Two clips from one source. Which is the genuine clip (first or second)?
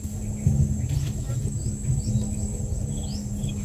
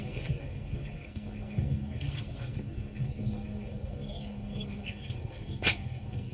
first